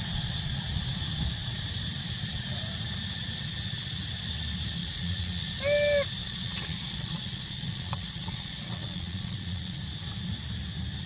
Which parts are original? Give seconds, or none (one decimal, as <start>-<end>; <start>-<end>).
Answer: 0.0-4.8; 5.5-6.2; 9.8-11.1